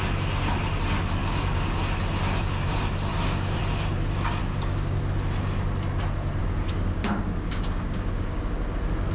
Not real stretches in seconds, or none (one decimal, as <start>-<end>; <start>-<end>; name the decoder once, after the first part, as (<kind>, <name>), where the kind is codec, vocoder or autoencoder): 1.2-1.8 (codec, DAC); 3.1-3.6; 4.4-5.0; 6.4-8.4